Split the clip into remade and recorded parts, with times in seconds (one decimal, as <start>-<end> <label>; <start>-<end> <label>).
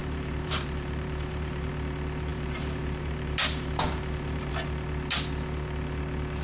0.0-1.7 remade; 1.7-2.3 recorded; 2.3-4.5 remade; 4.5-6.4 recorded